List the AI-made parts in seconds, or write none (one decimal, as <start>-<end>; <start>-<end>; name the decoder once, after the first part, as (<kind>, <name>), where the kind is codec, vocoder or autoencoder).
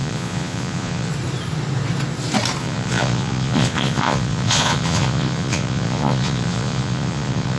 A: 0.0-1.1 (vocoder, Vocos); 2.6-7.6